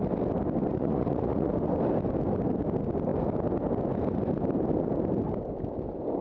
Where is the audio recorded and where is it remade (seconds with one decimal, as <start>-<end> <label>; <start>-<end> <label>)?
0.0-0.7 recorded; 0.7-1.5 remade; 1.5-6.2 recorded